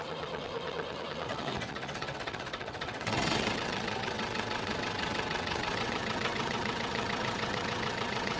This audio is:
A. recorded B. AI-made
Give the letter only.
B